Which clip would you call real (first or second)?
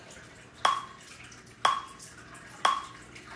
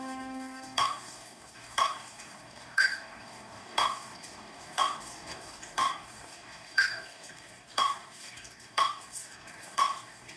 first